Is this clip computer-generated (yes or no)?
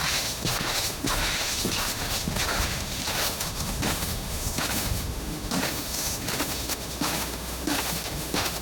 yes